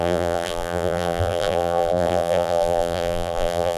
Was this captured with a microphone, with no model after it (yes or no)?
no